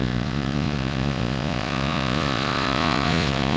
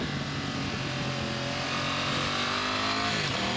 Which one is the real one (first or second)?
second